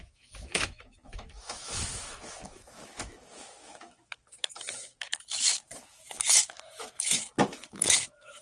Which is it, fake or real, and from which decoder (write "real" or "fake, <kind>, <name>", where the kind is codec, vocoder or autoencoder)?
fake, autoencoder, DAC-VAE